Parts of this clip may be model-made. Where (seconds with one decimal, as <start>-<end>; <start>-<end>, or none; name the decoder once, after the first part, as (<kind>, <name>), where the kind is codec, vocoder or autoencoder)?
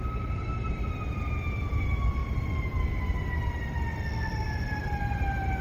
4.3-5.6 (vocoder, BigVGAN v2)